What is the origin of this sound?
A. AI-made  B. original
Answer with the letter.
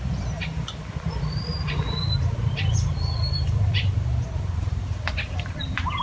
A